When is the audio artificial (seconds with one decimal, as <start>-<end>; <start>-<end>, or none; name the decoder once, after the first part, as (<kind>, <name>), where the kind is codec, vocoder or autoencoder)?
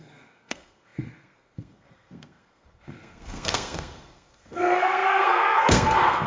0.0-6.3 (codec, SNAC)